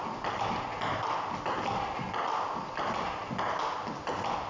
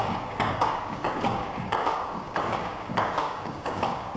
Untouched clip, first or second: first